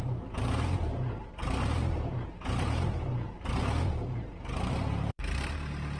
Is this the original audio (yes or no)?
no